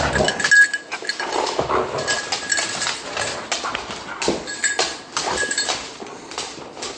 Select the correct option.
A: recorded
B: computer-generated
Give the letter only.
A